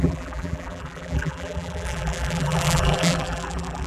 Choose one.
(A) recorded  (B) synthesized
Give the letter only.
B